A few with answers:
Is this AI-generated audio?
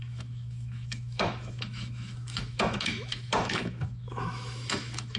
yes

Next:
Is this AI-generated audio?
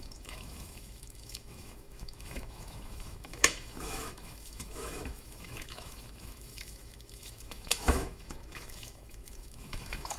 yes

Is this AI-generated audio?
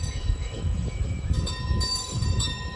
yes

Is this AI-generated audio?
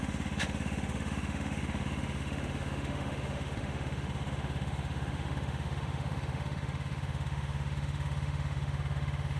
yes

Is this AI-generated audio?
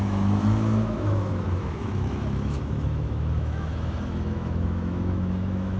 yes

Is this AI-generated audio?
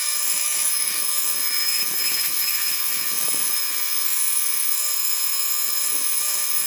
yes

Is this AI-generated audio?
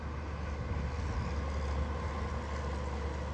no